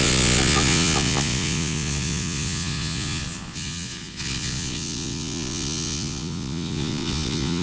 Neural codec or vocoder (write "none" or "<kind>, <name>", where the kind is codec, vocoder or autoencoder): vocoder, Vocos